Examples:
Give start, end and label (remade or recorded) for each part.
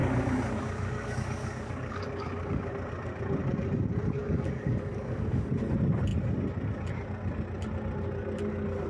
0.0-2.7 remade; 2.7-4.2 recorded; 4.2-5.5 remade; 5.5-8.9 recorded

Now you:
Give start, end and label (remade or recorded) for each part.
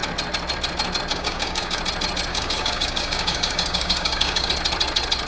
0.0-1.1 recorded; 1.1-1.8 remade; 1.8-2.3 recorded; 2.3-4.5 remade; 4.5-5.3 recorded